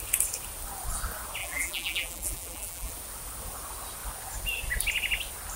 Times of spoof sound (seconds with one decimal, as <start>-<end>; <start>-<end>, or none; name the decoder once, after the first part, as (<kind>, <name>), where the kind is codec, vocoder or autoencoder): 1.4-2.9 (vocoder, BigVGAN v2)